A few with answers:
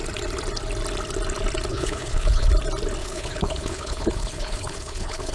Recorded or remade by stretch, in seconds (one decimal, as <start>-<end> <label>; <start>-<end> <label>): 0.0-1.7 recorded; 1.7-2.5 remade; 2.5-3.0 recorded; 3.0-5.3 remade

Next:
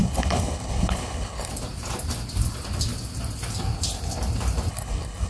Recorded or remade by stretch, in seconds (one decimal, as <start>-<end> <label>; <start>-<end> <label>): 0.0-1.5 remade; 1.5-4.7 recorded; 4.7-5.3 remade

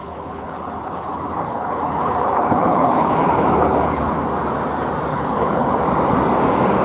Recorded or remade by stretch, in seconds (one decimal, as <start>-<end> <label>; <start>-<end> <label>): 0.0-4.1 remade; 4.1-5.1 recorded; 5.1-5.7 remade; 5.7-6.8 recorded

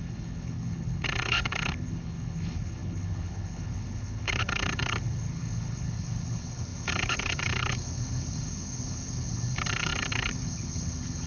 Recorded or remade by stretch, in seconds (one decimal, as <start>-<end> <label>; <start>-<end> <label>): 0.0-11.3 remade

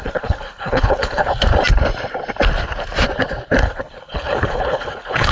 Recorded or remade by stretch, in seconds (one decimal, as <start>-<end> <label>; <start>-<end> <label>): 0.0-1.2 remade; 1.2-3.6 recorded; 3.6-5.3 remade

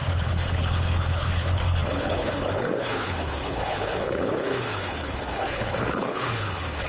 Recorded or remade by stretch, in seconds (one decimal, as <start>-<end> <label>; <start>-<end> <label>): 0.0-6.9 remade

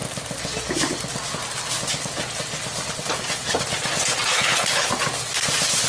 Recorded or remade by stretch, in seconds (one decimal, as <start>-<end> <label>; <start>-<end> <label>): 0.0-4.3 recorded; 4.3-4.9 remade; 4.9-5.9 recorded